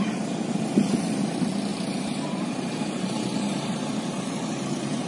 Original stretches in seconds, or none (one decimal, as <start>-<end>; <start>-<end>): 0.0-1.7